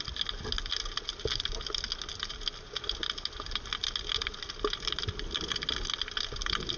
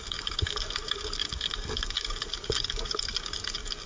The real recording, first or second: first